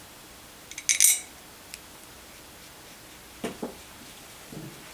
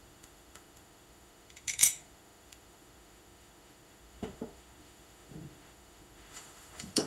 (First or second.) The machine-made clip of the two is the second